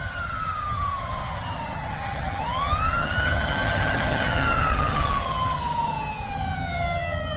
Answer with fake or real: fake